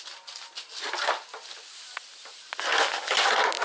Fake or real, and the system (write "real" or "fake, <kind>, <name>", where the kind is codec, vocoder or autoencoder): real